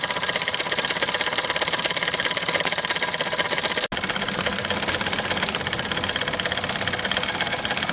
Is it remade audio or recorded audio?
recorded